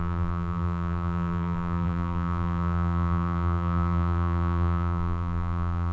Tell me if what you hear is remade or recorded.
remade